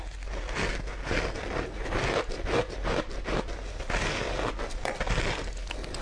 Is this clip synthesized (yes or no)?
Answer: no